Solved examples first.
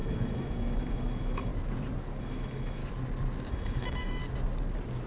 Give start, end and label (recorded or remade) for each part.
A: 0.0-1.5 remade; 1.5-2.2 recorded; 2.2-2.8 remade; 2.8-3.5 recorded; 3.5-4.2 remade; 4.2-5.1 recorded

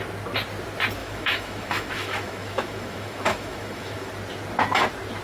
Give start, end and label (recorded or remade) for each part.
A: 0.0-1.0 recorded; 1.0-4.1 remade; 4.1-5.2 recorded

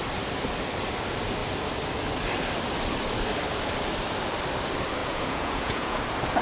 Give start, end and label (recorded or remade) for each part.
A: 0.0-5.0 recorded; 5.0-6.0 remade; 6.0-6.4 recorded

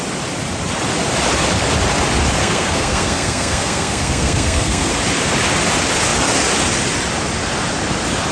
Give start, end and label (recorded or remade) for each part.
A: 0.0-2.4 recorded; 2.4-4.9 remade; 4.9-8.3 recorded

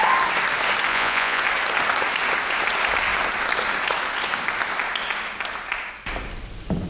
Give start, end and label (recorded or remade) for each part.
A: 0.0-0.9 recorded; 0.9-1.4 remade; 1.4-6.9 recorded